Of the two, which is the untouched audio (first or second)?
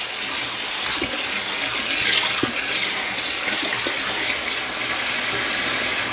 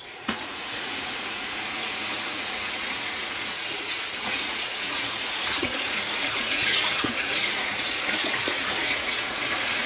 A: first